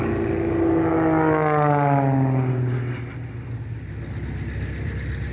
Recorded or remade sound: recorded